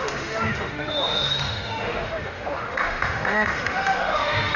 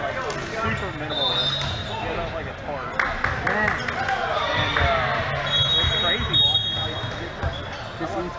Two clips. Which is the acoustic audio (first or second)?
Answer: second